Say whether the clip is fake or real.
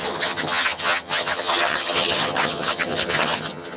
fake